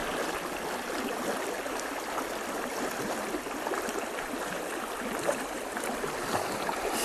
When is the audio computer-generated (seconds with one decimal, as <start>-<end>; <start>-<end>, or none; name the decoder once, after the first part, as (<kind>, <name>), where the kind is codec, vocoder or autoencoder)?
none